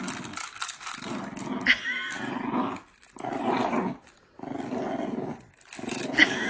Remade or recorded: recorded